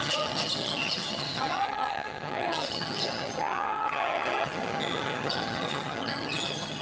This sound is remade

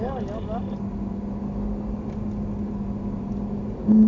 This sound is recorded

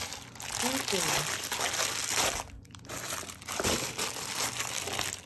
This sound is recorded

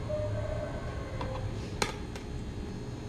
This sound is recorded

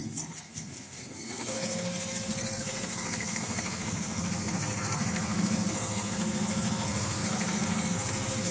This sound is remade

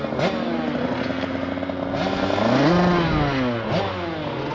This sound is recorded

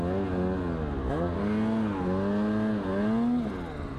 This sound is recorded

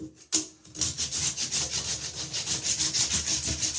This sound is recorded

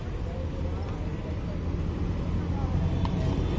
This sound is recorded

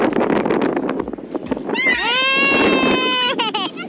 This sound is recorded